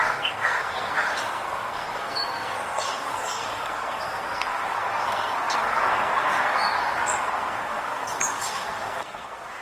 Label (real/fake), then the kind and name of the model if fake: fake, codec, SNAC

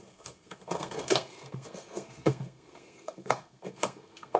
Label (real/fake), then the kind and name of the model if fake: fake, codec, SNAC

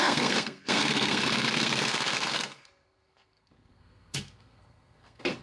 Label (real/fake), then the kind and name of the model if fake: fake, codec, SNAC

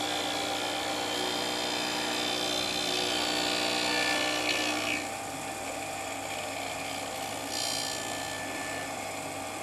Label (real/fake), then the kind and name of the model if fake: real